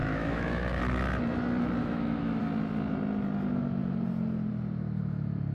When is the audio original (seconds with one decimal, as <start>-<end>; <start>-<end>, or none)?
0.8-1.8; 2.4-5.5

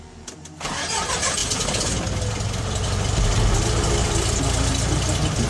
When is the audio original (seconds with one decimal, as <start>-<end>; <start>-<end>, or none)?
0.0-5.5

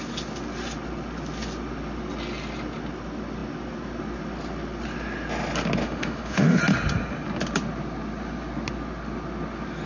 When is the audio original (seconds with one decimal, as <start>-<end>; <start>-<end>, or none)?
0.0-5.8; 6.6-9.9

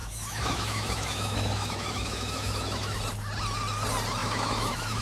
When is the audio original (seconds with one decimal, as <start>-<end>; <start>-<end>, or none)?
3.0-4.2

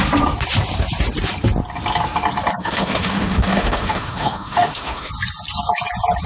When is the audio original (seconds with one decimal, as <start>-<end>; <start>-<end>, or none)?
0.0-2.6; 5.1-6.3